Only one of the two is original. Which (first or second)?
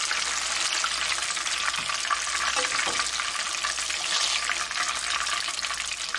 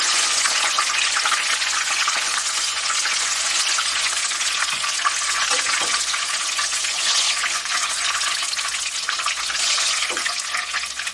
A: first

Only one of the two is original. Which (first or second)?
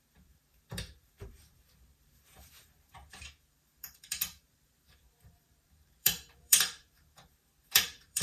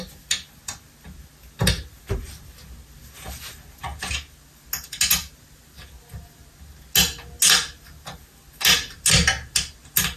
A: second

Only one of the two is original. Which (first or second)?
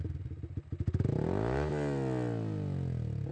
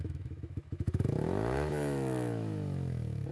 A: first